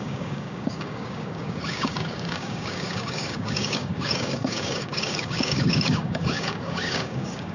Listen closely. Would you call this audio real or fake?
fake